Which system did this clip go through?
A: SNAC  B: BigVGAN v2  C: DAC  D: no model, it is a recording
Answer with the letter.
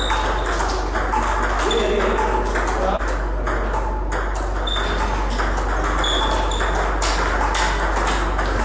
D